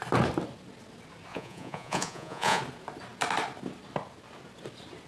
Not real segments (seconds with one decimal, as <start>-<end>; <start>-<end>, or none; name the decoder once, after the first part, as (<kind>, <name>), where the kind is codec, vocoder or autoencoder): 1.3-2.6 (vocoder, Vocos)